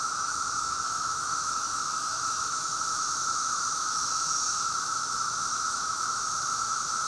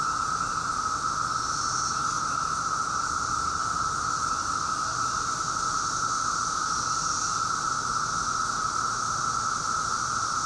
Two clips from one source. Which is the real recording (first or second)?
second